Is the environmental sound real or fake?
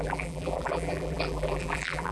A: fake